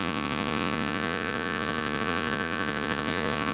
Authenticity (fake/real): fake